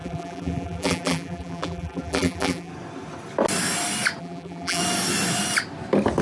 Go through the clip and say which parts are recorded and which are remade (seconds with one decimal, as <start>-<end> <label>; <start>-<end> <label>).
0.0-2.7 remade; 2.7-4.2 recorded; 4.2-4.8 remade; 4.8-6.2 recorded